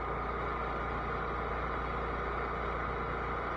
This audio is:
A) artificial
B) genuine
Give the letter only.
B